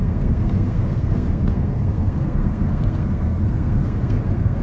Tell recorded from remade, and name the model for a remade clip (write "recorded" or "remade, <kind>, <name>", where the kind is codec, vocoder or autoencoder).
remade, codec, SNAC